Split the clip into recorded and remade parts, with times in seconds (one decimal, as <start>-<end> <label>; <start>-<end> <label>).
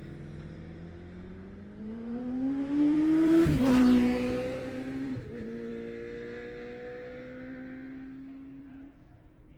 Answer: 0.0-1.8 recorded; 1.8-5.7 remade; 5.7-8.6 recorded; 8.6-9.6 remade